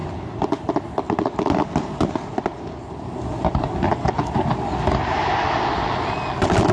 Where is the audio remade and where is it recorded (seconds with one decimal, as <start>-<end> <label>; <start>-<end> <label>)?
0.0-6.7 recorded